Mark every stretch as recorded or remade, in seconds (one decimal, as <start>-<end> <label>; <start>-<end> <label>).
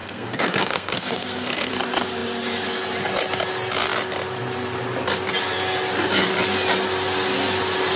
0.0-1.7 remade; 1.7-8.0 recorded